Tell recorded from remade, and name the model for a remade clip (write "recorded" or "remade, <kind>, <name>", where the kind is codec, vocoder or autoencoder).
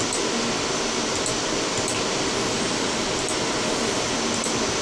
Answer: recorded